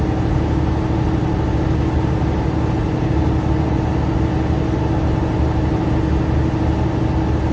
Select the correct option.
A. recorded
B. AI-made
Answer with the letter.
A